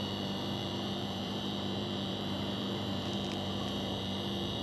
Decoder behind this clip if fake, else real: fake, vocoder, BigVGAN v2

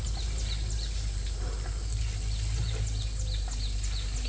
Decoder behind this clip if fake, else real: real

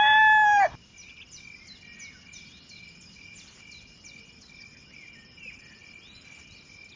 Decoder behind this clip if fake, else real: real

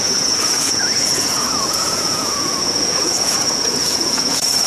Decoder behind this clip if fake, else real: fake, vocoder, Vocos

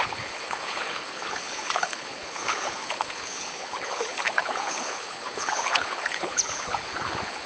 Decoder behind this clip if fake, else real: fake, codec, HILCodec